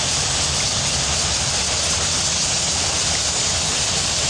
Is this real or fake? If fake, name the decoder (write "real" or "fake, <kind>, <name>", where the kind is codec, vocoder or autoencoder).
real